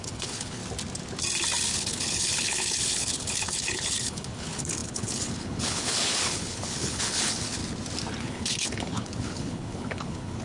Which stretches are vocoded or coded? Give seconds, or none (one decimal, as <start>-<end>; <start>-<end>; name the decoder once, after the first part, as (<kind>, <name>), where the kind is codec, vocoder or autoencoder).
0.0-0.6 (codec, HILCodec); 1.7-7.6; 8.2-10.4